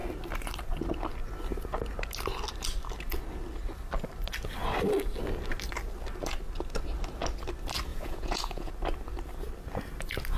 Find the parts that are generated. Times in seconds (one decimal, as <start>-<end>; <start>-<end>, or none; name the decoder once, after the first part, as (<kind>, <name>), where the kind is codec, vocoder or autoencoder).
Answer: 7.9-8.7 (vocoder, Vocos)